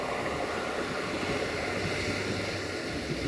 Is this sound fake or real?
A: real